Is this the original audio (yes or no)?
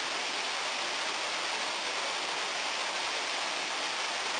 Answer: yes